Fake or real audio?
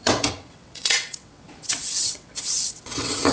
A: fake